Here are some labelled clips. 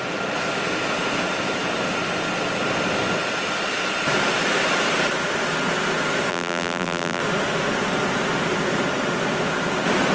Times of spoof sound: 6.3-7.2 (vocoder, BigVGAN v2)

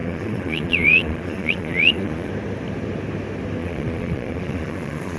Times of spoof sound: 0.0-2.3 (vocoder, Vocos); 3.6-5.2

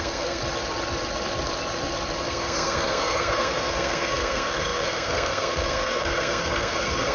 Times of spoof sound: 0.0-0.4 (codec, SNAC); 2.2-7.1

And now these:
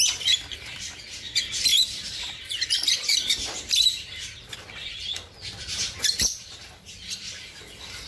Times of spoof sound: 0.0-8.1 (vocoder, BigVGAN v2)